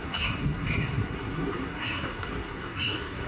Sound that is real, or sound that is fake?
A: fake